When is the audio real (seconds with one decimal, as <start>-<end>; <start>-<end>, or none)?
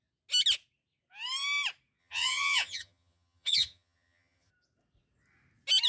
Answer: 0.0-2.0; 4.5-5.9